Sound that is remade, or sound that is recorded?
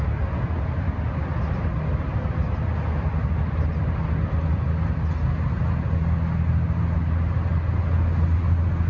recorded